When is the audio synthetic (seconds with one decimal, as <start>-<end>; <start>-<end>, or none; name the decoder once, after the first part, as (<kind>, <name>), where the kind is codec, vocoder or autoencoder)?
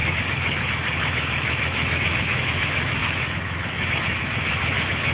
0.0-5.1 (autoencoder, DAC-VAE)